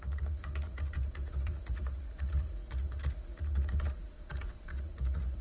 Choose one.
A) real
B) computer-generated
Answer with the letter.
B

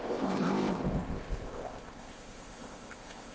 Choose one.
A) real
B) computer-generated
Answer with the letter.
B